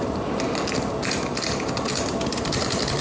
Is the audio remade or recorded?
recorded